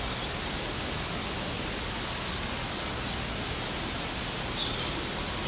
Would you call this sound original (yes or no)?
yes